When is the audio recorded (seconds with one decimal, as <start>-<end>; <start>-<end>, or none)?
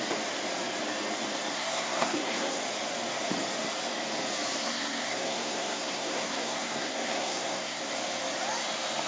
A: 0.0-1.5; 2.6-4.6; 7.9-9.1